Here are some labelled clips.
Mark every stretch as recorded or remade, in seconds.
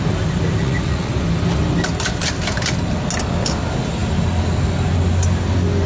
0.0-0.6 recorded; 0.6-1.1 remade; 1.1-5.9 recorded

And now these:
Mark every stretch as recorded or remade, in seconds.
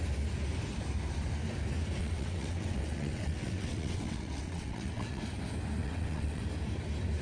0.0-2.0 recorded; 2.0-5.2 remade; 5.2-5.8 recorded; 5.8-6.4 remade; 6.4-7.2 recorded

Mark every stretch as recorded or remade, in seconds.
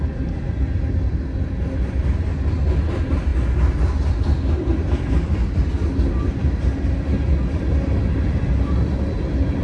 0.0-9.6 recorded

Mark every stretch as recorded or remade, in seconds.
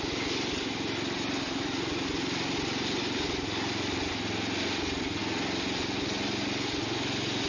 0.0-7.5 recorded